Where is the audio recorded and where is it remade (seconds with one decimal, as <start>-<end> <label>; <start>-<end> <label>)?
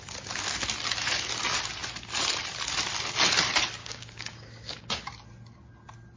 0.0-3.8 recorded; 3.8-5.1 remade; 5.1-6.2 recorded